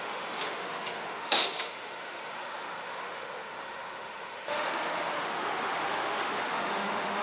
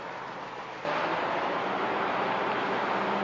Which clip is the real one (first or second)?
second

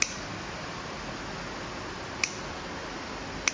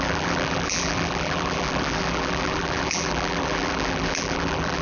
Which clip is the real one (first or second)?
first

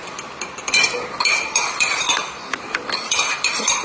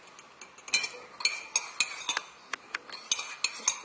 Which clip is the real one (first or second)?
second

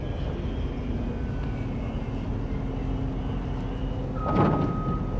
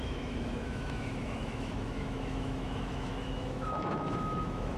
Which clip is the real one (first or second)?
first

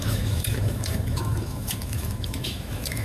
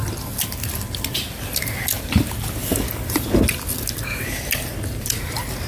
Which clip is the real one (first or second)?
second